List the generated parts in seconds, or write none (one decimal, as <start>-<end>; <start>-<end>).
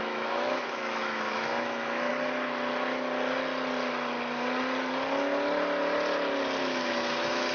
0.0-2.1; 6.6-7.5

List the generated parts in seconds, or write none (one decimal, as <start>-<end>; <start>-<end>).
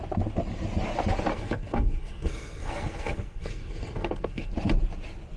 1.3-4.5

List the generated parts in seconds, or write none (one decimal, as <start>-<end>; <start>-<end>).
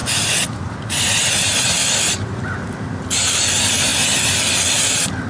0.0-0.7; 1.8-3.3; 3.9-4.5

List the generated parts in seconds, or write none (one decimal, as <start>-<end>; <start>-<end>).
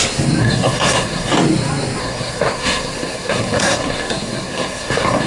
0.4-1.3; 2.0-5.3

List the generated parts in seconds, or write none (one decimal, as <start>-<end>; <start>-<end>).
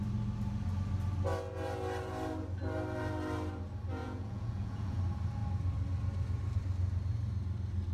4.0-5.0